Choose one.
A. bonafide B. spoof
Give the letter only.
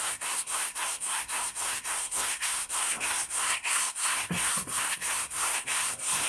B